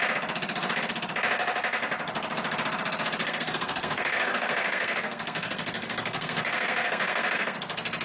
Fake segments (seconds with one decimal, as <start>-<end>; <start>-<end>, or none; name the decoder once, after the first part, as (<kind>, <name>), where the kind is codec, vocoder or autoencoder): 3.2-7.6 (codec, SNAC)